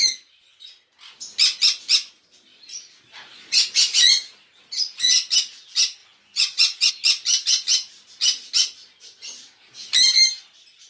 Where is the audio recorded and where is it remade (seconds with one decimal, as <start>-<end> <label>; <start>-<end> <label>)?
0.0-6.0 recorded; 6.0-6.9 remade; 6.9-10.9 recorded